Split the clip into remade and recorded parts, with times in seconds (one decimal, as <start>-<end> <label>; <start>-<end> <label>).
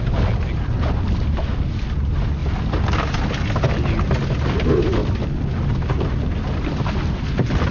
0.0-7.7 recorded